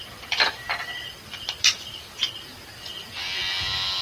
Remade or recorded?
recorded